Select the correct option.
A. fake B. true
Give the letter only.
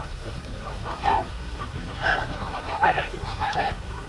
A